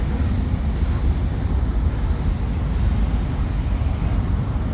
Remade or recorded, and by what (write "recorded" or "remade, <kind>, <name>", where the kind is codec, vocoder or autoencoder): recorded